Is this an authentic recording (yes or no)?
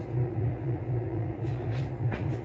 no